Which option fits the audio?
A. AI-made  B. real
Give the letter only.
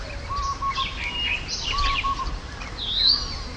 B